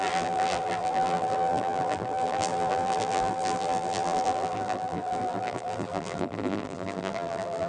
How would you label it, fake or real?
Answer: fake